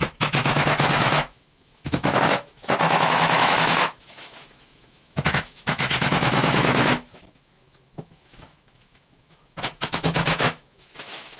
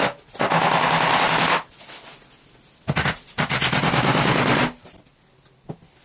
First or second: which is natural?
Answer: second